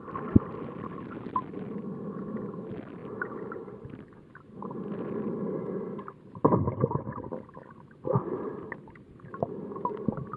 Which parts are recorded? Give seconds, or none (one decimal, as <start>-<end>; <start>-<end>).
0.0-10.4